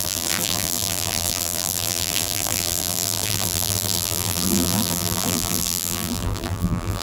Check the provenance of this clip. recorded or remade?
remade